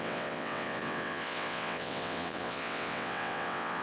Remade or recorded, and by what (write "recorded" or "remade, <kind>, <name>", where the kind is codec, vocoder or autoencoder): remade, vocoder, WaveNeXt